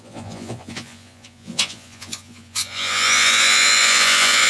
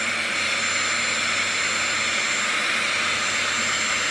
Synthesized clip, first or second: first